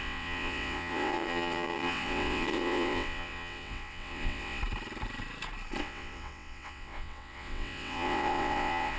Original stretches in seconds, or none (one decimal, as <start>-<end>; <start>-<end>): 4.6-5.8